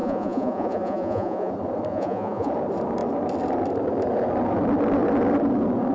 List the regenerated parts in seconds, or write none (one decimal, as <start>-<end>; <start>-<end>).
0.0-1.5; 1.9-2.5